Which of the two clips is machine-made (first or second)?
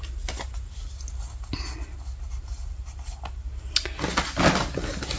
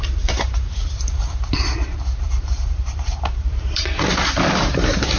second